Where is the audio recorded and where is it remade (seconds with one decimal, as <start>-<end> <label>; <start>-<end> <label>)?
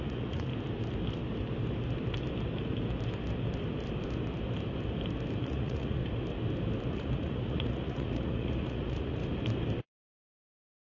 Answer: 0.0-0.5 remade; 0.5-5.4 recorded; 5.4-6.0 remade; 6.0-6.9 recorded; 6.9-9.2 remade; 9.2-9.8 recorded; 9.8-10.9 remade